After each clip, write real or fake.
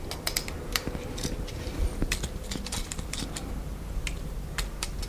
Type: real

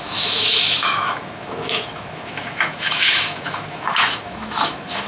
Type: fake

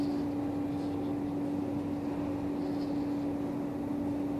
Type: real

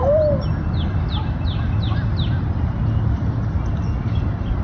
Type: real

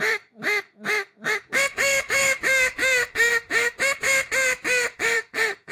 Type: fake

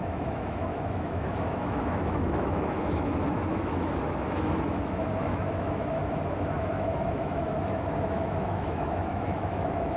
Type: fake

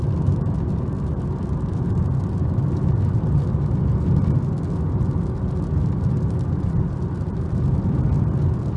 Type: real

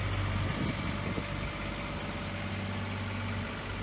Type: real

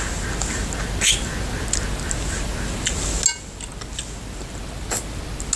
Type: real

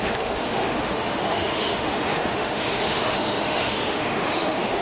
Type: fake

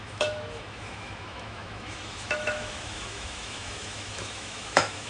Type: fake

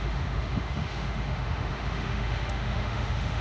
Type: fake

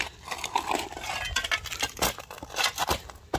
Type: real